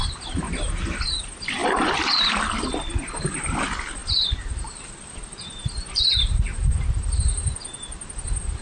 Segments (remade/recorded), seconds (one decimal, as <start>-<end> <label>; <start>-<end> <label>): 0.0-1.6 recorded; 1.6-2.4 remade; 2.4-4.0 recorded; 4.0-7.2 remade; 7.2-8.6 recorded